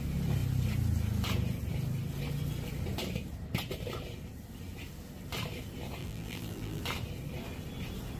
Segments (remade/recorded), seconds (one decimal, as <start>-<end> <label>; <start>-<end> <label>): 0.0-6.0 recorded; 6.0-6.8 remade; 6.8-8.2 recorded